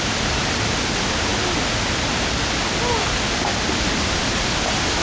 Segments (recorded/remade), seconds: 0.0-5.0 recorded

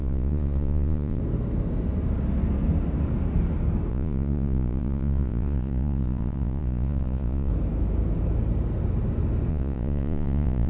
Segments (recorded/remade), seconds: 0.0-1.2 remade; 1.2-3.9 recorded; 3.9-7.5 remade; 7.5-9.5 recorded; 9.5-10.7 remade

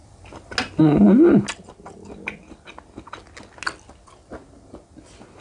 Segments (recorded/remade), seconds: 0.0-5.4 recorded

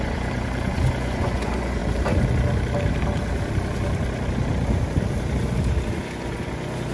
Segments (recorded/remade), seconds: 0.0-1.8 remade; 1.8-5.9 recorded; 5.9-6.9 remade

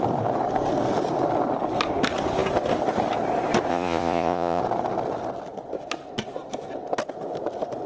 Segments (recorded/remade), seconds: 0.0-3.7 recorded; 3.7-4.6 remade; 4.6-7.9 recorded

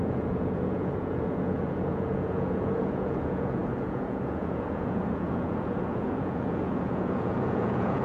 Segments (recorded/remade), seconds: 0.0-8.0 remade

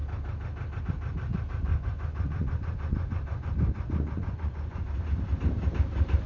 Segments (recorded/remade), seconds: 0.0-1.7 recorded; 1.7-4.9 remade; 4.9-6.3 recorded